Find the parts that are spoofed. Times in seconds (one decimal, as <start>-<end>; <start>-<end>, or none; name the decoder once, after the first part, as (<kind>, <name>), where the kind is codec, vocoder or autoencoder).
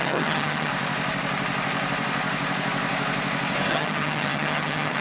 0.0-0.7 (vocoder, HiFi-GAN); 3.7-5.0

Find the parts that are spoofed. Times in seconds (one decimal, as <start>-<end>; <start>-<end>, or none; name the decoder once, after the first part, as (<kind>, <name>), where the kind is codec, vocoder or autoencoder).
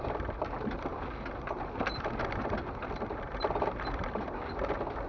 none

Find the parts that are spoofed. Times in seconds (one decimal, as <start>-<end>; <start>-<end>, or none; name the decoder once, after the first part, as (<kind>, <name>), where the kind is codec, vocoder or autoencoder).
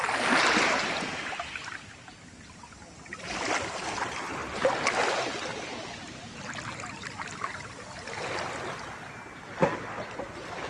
none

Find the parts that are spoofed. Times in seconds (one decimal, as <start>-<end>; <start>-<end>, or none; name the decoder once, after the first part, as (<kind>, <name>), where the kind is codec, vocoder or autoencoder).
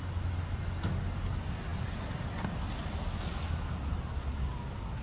none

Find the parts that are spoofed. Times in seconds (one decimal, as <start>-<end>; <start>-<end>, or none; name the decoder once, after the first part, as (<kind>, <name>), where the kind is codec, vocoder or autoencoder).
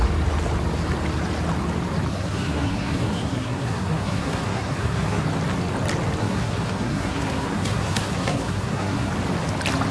2.1-5.2 (codec, SNAC); 6.2-9.1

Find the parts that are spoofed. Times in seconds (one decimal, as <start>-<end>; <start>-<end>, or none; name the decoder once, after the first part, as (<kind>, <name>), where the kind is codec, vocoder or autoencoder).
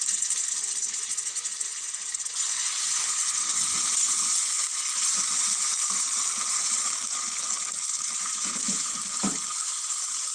none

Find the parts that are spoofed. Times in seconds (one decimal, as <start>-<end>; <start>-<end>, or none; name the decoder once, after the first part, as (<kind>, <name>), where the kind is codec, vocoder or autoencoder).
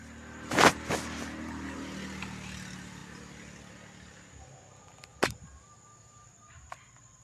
none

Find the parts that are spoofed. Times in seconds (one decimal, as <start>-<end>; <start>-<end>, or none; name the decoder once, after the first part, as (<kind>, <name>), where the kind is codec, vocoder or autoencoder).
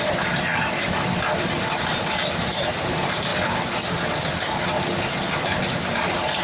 0.0-0.5 (vocoder, BigVGAN v2); 1.9-3.3; 5.7-6.4